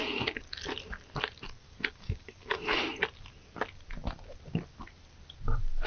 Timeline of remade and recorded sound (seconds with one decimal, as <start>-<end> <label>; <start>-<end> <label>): 0.0-1.6 recorded; 1.6-2.8 remade; 2.8-5.9 recorded